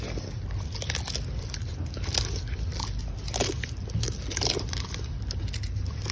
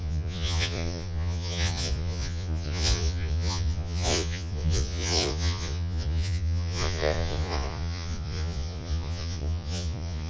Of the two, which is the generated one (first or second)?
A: second